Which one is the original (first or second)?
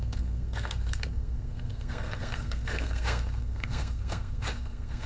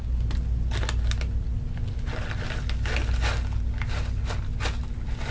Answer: second